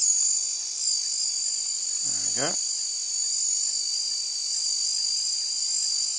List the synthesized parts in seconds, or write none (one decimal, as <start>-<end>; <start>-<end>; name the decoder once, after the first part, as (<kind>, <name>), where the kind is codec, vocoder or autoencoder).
none